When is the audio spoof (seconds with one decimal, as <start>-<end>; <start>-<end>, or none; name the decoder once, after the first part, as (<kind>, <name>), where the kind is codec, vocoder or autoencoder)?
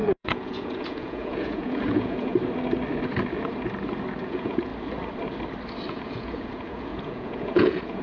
0.0-2.3 (vocoder, Vocos); 4.2-4.7; 5.9-8.0